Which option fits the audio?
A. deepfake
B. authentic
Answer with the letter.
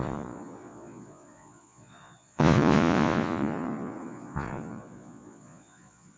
A